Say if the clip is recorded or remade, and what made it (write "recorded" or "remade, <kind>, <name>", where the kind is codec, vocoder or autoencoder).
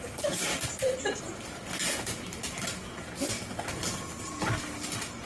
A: recorded